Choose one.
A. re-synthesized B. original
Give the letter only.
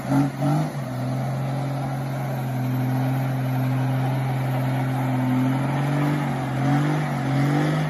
B